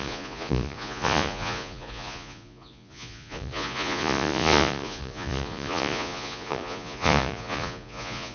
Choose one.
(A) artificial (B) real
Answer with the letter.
A